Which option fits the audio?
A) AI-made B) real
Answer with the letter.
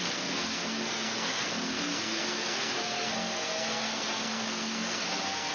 A